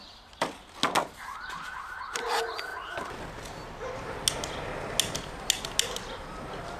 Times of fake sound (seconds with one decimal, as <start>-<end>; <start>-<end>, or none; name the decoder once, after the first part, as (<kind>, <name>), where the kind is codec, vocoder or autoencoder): none